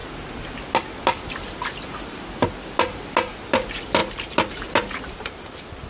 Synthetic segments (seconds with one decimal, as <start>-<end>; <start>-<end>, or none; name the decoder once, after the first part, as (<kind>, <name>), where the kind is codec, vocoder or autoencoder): none